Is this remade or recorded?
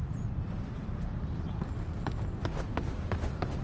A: recorded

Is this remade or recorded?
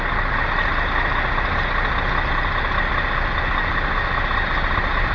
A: recorded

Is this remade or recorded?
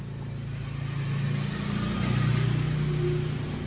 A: recorded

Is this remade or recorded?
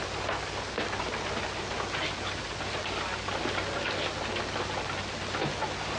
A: recorded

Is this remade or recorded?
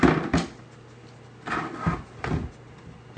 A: recorded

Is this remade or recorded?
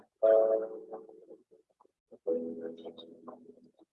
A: recorded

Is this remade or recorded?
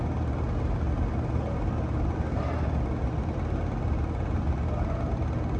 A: recorded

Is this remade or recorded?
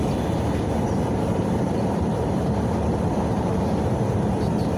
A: remade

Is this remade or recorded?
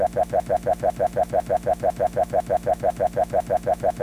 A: recorded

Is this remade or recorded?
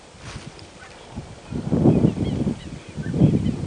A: recorded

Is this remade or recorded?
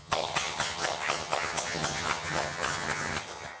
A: remade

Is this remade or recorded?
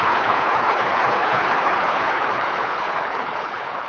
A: remade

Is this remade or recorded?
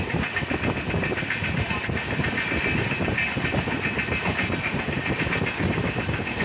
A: recorded